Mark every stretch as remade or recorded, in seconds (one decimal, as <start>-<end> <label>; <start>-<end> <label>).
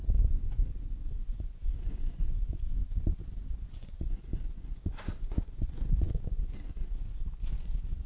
0.0-2.8 remade; 2.8-3.6 recorded; 3.6-8.1 remade